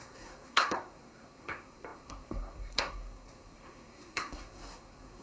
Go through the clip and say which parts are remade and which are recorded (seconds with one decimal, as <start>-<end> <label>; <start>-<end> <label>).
0.0-5.2 remade